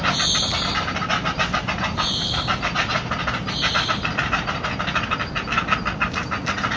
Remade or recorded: recorded